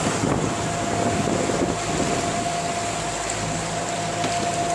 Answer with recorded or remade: recorded